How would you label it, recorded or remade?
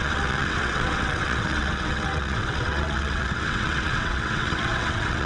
remade